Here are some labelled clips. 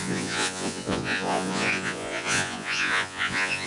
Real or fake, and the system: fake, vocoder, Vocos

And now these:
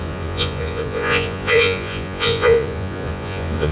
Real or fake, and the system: fake, vocoder, Vocos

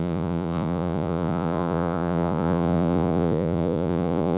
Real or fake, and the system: fake, vocoder, Vocos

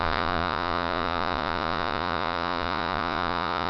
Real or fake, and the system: fake, vocoder, Vocos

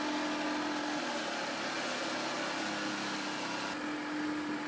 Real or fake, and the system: real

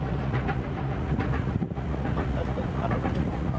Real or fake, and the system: fake, vocoder, Vocos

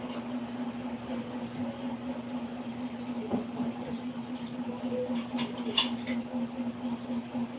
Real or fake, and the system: real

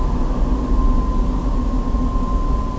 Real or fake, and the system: real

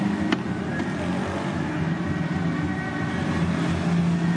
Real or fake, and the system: real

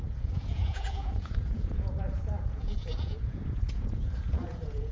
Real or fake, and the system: fake, vocoder, Vocos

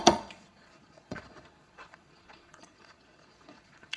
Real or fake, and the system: fake, vocoder, Vocos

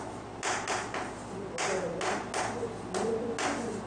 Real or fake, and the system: real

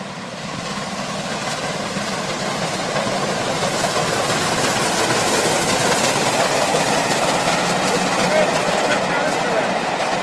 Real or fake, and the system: real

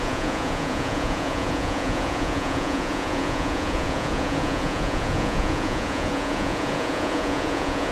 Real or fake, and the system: fake, vocoder, Vocos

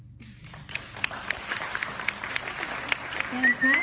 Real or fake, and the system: real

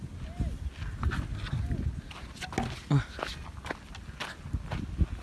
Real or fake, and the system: real